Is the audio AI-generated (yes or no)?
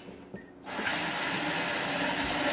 no